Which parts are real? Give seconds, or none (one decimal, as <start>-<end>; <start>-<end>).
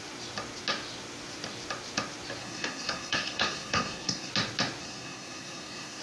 0.0-2.4; 4.3-4.8